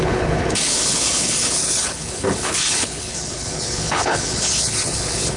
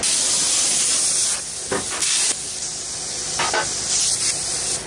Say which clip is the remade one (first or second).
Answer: first